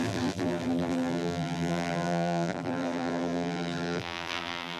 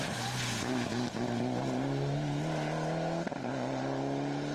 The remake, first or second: first